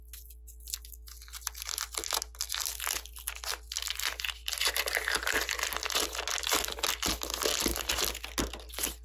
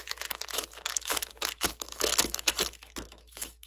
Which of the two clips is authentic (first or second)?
first